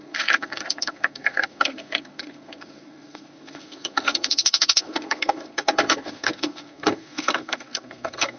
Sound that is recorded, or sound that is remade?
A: remade